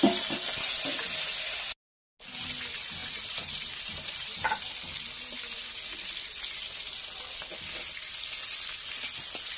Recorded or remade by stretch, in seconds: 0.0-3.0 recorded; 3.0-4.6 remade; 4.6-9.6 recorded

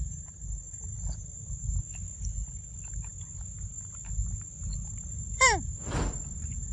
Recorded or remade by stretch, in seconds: 0.0-0.8 remade; 0.8-6.7 recorded

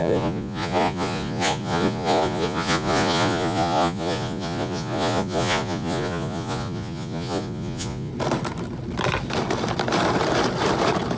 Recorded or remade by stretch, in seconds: 0.0-8.1 remade; 8.1-11.2 recorded

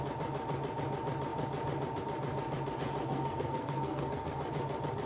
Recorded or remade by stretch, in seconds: 0.0-3.1 recorded; 3.1-4.4 remade; 4.4-5.1 recorded

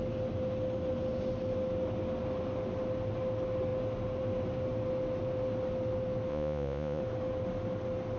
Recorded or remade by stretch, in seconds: 0.0-6.3 recorded; 6.3-7.0 remade; 7.0-8.2 recorded

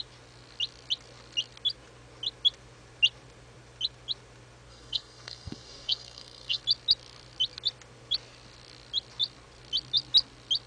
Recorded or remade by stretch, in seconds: 0.0-4.7 recorded; 4.7-6.6 remade; 6.6-10.7 recorded

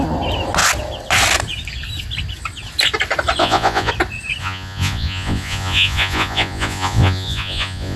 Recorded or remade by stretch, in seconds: 0.0-3.4 recorded; 3.4-3.9 remade; 3.9-4.4 recorded; 4.4-8.0 remade

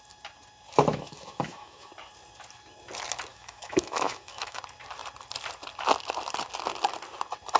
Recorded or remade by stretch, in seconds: 0.0-0.9 recorded; 0.9-1.9 remade; 1.9-3.3 recorded; 3.3-4.6 remade; 4.6-7.6 recorded